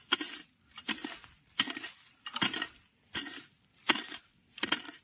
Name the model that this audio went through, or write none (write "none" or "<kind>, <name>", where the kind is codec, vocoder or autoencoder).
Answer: none